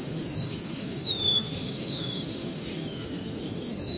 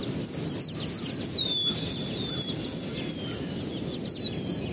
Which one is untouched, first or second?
second